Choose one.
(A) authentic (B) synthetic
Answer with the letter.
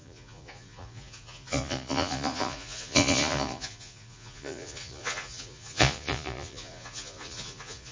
B